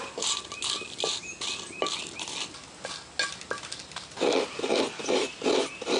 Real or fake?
real